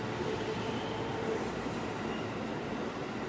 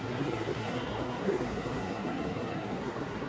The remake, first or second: second